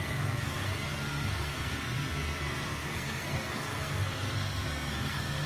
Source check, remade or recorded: remade